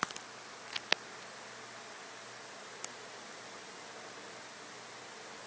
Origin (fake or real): real